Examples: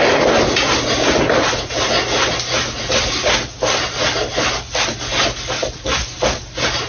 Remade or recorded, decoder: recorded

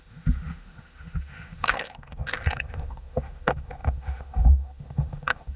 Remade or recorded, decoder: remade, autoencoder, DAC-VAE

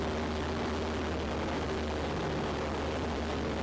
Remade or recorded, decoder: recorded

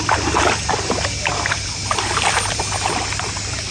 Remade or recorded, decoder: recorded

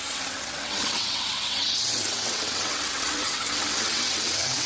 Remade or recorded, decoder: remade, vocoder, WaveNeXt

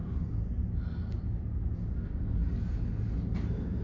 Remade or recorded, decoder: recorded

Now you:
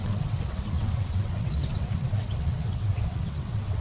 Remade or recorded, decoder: remade, vocoder, WaveNeXt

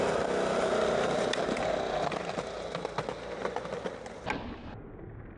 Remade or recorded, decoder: recorded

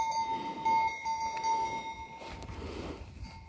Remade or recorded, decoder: recorded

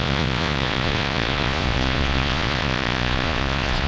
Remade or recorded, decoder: remade, vocoder, Vocos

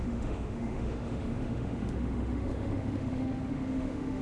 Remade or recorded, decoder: remade, autoencoder, DAC-VAE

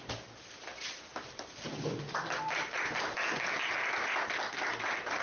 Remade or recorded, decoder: recorded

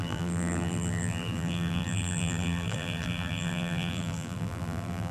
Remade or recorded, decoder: remade, vocoder, BigVGAN v2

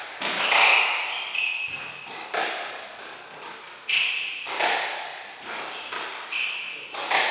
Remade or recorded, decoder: recorded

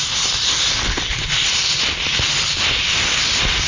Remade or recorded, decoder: recorded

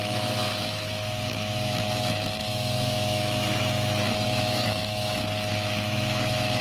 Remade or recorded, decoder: remade, autoencoder, DAC-VAE